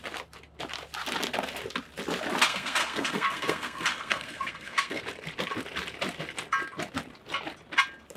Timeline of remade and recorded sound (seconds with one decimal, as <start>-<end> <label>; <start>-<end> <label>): 0.0-2.5 recorded; 2.5-5.0 remade; 5.0-8.2 recorded